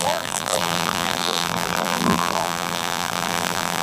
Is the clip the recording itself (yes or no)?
no